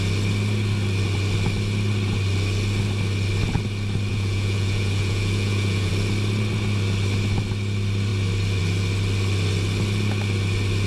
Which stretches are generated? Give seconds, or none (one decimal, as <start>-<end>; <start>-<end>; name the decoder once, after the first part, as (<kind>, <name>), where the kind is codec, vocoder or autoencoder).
4.1-5.9 (vocoder, Vocos)